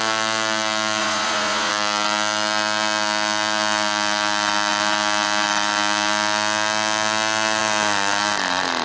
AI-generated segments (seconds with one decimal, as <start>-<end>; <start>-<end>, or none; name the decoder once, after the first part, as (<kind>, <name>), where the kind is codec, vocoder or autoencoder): 1.0-1.7 (vocoder, Vocos)